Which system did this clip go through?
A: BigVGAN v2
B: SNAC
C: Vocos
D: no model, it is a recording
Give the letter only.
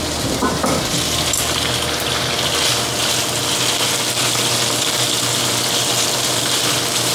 D